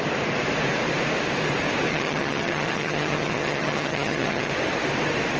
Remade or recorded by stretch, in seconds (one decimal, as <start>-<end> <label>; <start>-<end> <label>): 0.0-1.9 recorded; 1.9-4.5 remade; 4.5-5.4 recorded